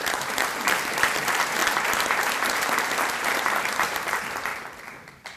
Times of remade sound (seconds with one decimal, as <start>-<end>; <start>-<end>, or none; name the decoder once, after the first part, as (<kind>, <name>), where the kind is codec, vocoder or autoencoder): 0.0-4.5 (vocoder, BigVGAN v2)